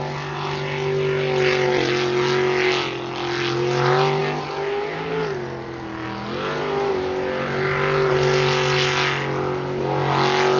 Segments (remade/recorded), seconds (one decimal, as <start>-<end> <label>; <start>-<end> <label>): 0.0-10.6 recorded

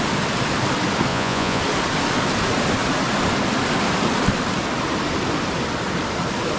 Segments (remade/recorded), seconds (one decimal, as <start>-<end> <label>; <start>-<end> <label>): 0.0-1.1 recorded; 1.1-1.6 remade; 1.6-6.6 recorded

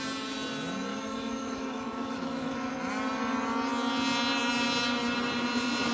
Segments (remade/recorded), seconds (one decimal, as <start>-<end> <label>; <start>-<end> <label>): 0.0-0.9 recorded; 0.9-2.7 remade; 2.7-5.9 recorded

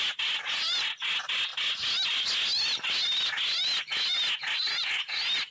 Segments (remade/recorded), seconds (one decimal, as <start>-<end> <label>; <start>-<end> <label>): 0.0-5.5 recorded

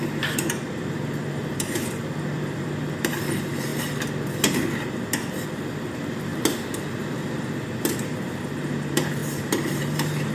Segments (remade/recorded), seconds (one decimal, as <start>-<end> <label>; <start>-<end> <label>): 0.0-3.7 remade; 3.7-5.7 recorded; 5.7-6.3 remade; 6.3-7.0 recorded; 7.0-10.3 remade

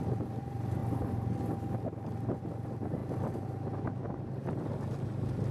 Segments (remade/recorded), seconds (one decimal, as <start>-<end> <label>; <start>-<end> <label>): 0.0-0.8 remade; 0.8-2.4 recorded; 2.4-3.0 remade; 3.0-4.1 recorded; 4.1-5.5 remade

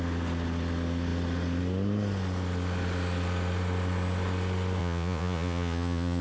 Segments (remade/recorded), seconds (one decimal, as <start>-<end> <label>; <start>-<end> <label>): 0.0-4.8 recorded; 4.8-6.2 remade

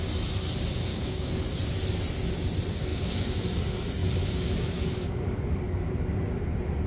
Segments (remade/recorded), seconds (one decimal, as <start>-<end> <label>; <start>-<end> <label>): 0.0-0.9 recorded; 0.9-1.5 remade; 1.5-2.9 recorded; 2.9-3.6 remade; 3.6-4.0 recorded; 4.0-5.8 remade; 5.8-6.9 recorded